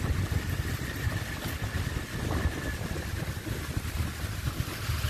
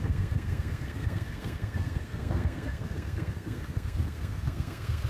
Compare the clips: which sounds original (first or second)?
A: first